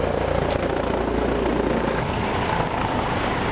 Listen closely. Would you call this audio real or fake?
real